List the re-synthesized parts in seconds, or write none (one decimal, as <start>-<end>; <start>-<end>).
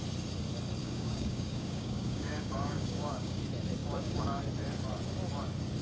0.8-3.4; 3.8-4.4